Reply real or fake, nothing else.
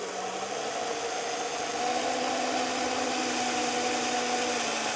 real